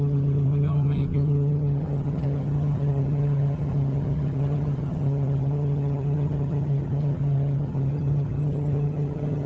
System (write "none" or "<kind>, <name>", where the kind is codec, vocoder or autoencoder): vocoder, HiFi-GAN